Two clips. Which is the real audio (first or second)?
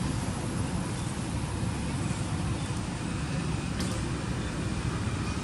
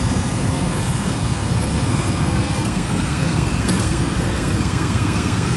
first